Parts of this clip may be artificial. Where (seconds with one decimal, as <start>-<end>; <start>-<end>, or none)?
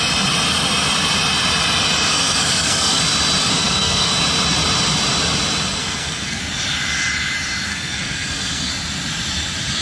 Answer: 2.1-3.0; 3.4-4.1; 5.8-6.4; 7.7-8.7